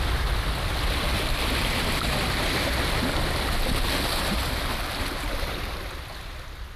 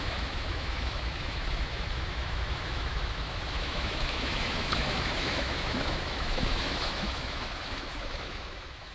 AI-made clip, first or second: second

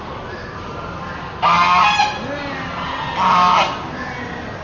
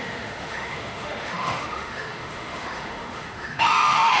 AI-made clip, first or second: second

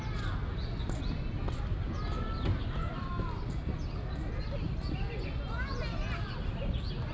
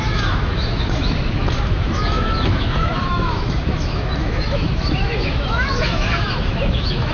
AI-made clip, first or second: second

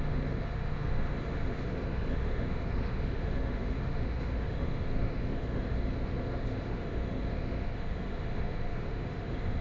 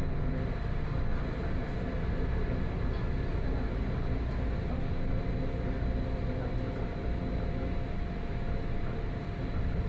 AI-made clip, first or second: first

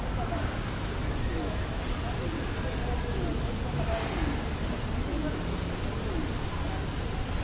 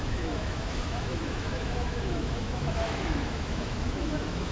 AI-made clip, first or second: second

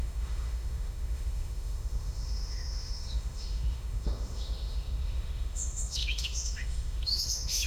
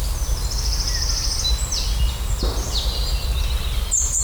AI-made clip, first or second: first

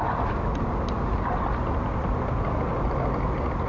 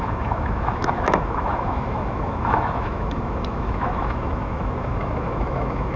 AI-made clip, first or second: second